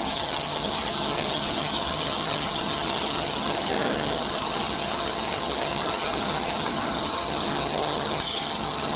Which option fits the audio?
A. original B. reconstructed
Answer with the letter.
B